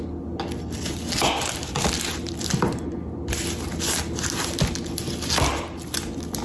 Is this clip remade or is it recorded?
recorded